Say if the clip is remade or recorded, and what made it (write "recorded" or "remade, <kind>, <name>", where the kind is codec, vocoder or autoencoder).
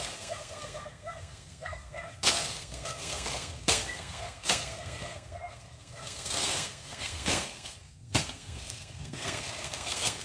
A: remade, codec, SNAC